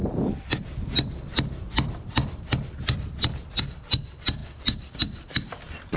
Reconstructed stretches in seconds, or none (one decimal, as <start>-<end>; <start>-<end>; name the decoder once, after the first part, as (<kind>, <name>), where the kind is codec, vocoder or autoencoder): 0.0-3.6 (vocoder, BigVGAN v2); 4.4-6.0